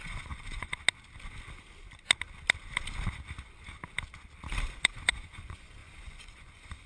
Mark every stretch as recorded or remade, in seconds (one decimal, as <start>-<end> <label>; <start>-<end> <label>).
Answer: 0.0-0.7 remade; 0.7-4.8 recorded; 4.8-6.9 remade